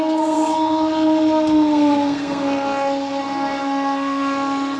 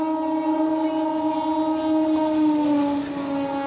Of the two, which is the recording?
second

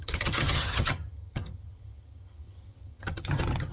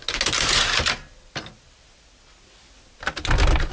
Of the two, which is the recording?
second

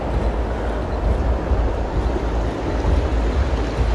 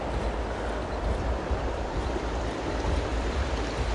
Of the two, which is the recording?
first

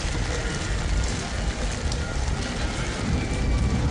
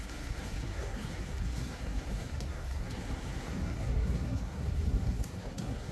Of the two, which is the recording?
first